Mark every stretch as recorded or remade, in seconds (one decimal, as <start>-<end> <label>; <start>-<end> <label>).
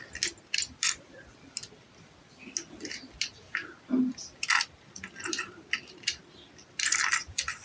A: 0.0-7.6 recorded